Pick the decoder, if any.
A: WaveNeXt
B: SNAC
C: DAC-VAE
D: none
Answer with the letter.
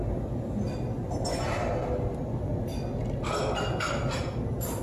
D